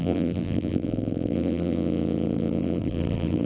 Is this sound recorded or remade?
remade